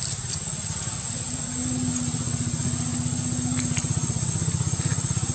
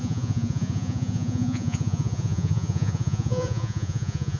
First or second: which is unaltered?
first